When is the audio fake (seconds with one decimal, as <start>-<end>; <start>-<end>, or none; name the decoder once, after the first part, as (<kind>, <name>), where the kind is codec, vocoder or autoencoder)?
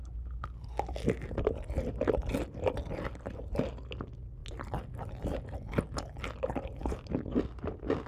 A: none